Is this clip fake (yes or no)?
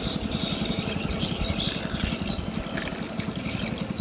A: no